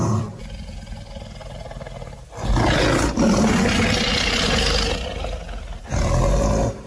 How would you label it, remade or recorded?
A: recorded